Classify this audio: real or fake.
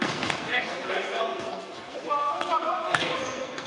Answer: fake